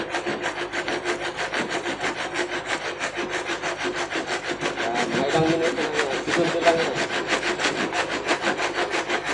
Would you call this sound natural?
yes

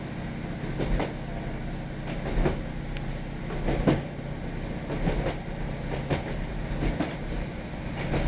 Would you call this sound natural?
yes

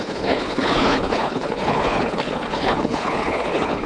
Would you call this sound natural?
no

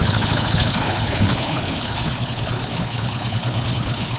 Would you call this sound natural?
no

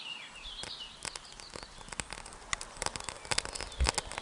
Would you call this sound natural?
yes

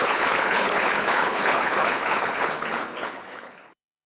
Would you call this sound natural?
no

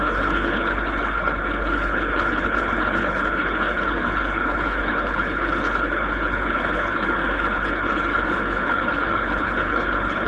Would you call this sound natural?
no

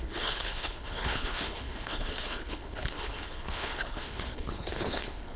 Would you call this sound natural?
no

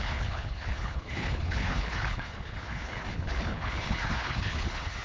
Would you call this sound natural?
no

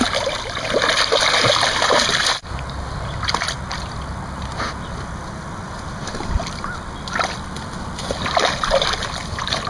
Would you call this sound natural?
yes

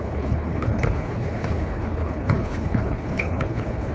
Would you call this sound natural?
no